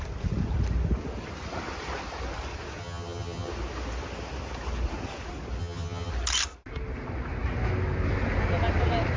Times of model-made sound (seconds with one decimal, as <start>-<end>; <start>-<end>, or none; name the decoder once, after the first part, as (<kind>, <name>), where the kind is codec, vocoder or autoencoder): 2.8-3.5 (vocoder, HiFi-GAN); 5.6-6.1